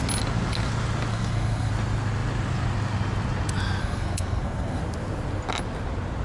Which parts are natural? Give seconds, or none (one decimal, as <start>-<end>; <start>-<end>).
0.0-1.1; 1.7-3.8; 4.8-6.2